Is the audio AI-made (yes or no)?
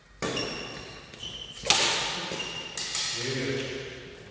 no